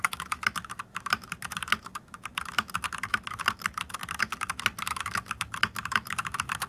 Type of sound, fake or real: fake